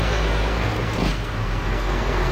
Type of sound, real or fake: fake